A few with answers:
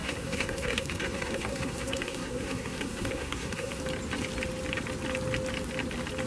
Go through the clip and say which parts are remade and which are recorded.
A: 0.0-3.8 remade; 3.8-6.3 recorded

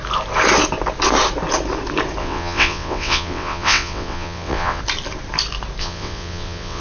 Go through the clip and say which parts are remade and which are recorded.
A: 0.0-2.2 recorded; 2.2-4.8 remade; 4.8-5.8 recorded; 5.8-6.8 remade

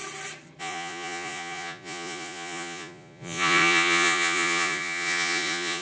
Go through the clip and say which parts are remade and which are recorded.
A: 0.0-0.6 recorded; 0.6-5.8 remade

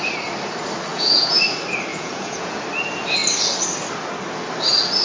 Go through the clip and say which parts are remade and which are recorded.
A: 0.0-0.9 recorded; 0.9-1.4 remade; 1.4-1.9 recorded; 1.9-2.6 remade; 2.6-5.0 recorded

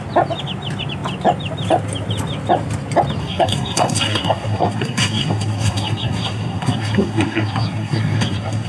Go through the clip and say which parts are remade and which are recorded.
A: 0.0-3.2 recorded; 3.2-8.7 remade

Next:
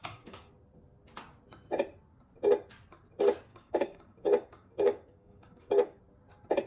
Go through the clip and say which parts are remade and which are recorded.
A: 0.0-0.5 remade; 0.5-3.5 recorded; 3.5-6.0 remade; 6.0-6.7 recorded

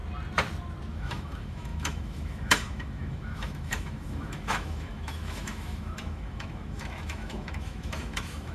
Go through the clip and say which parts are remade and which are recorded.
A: 0.0-0.9 recorded; 0.9-8.5 remade